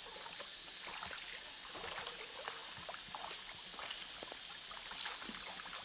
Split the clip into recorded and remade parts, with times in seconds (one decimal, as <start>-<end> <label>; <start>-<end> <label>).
0.0-5.8 recorded